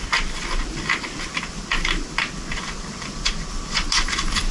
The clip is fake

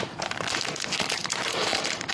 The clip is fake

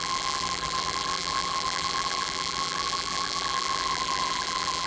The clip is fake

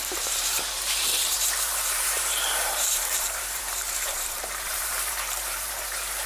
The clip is fake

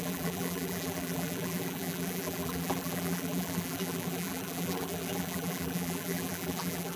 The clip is fake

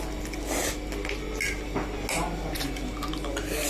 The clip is real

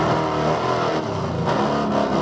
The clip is real